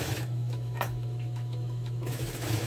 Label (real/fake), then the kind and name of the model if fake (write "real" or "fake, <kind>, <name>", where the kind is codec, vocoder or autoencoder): fake, autoencoder, DAC-VAE